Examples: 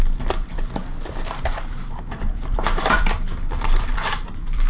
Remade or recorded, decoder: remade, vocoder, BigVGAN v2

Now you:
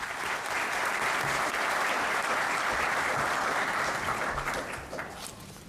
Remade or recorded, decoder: recorded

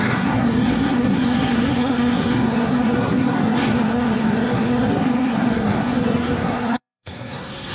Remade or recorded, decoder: remade, codec, SNAC